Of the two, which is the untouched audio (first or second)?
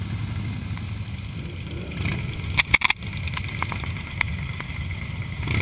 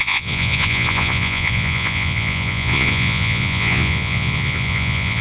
first